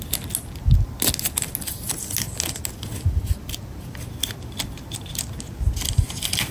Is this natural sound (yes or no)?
yes